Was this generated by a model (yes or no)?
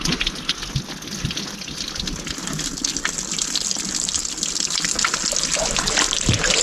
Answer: no